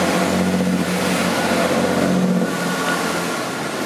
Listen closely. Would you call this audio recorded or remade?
recorded